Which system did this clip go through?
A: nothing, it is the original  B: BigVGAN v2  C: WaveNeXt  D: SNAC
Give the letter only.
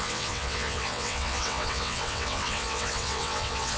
C